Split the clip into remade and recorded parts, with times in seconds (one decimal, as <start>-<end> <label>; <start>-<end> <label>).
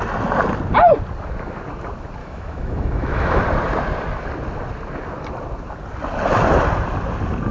0.0-2.2 recorded; 2.2-3.4 remade; 3.4-7.5 recorded